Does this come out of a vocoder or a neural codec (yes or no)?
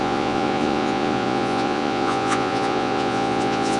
yes